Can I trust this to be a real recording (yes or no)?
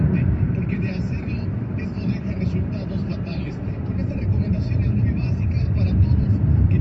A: no